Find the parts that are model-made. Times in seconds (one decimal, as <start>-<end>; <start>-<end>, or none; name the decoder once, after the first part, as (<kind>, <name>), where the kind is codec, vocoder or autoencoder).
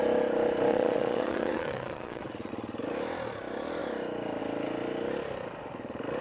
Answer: 0.7-2.5 (vocoder, Vocos)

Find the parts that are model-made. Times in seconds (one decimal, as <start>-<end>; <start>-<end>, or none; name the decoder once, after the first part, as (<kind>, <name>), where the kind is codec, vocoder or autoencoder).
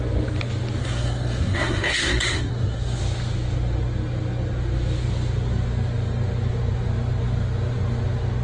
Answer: 0.8-3.0 (codec, SNAC)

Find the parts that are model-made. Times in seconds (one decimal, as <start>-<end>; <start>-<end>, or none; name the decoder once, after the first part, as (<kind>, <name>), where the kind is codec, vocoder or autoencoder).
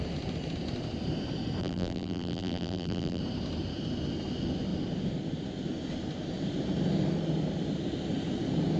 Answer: 1.6-3.2 (vocoder, BigVGAN v2)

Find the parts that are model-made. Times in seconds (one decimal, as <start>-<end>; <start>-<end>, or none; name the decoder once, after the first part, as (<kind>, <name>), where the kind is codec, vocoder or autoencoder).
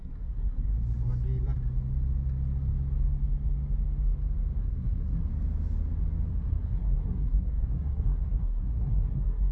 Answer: 0.0-0.7 (codec, SNAC); 4.6-5.3; 6.3-9.5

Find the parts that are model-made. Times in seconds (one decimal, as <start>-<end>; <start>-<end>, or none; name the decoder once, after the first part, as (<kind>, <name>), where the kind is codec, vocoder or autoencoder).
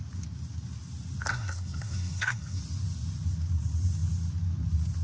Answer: 1.3-2.6 (codec, SNAC)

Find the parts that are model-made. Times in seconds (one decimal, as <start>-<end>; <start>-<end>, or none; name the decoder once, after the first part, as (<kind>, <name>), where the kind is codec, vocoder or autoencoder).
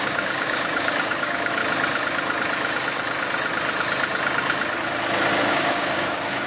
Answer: 0.0-1.6 (codec, DAC); 5.5-6.5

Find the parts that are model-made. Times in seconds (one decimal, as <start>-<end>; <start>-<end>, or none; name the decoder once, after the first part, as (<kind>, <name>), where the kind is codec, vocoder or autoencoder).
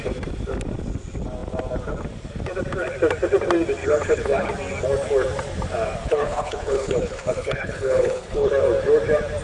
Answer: 3.8-4.5 (codec, HILCodec); 6.0-8.5